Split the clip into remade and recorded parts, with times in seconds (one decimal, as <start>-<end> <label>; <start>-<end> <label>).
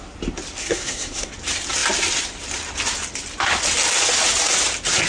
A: 0.0-0.6 recorded; 0.6-1.3 remade; 1.3-5.1 recorded